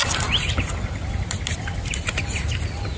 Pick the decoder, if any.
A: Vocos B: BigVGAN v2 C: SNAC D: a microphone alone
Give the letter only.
D